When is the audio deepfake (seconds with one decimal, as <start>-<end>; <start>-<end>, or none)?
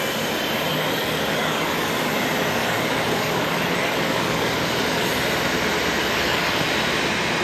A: 0.7-2.1; 2.6-5.1; 6.0-6.6